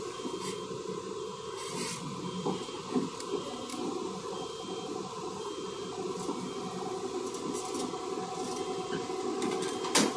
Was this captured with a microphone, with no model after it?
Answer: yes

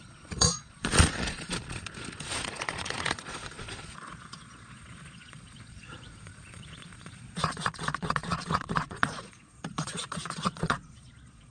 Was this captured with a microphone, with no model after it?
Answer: no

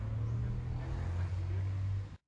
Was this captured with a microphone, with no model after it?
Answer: yes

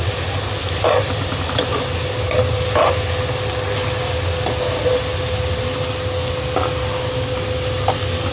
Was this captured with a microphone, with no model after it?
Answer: yes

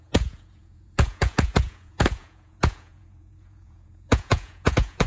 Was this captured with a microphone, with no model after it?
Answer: no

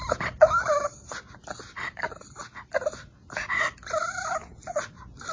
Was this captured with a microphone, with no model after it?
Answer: yes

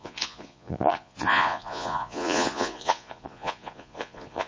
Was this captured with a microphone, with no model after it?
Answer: no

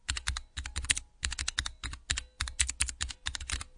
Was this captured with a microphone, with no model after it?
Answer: yes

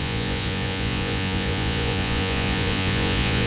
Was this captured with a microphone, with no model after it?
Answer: no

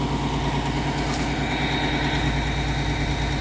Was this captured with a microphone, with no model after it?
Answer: yes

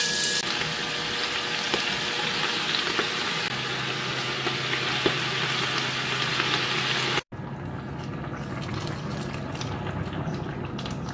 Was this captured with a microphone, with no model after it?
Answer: yes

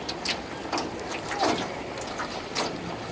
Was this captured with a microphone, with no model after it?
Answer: yes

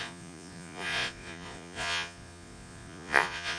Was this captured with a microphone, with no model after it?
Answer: no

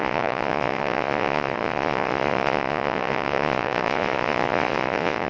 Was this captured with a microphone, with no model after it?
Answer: no